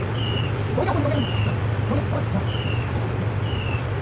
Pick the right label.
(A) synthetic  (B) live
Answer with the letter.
B